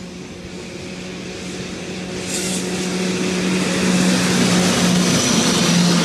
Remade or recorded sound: recorded